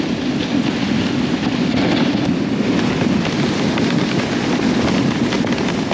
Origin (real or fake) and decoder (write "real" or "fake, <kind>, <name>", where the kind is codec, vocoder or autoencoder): real